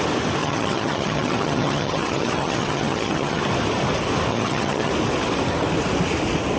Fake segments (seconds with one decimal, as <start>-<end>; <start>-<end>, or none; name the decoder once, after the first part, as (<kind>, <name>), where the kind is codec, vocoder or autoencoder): 0.4-3.4 (vocoder, HiFi-GAN); 4.3-4.9